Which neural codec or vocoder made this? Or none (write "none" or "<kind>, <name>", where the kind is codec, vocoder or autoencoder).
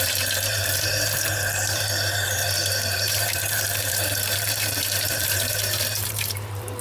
vocoder, BigVGAN v2